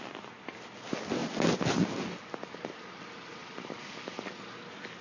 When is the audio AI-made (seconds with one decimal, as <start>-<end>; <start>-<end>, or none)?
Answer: none